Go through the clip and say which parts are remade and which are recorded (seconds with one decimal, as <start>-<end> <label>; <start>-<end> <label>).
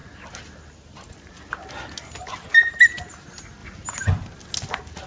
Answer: 0.0-5.1 recorded